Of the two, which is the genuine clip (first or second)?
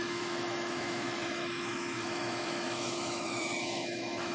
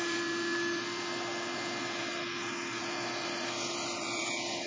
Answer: second